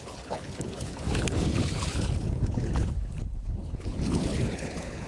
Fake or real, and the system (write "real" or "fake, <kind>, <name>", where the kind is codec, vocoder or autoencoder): fake, codec, HILCodec